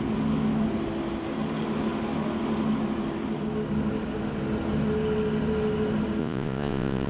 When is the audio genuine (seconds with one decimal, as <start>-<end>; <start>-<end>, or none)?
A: 0.0-6.2